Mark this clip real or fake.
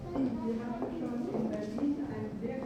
real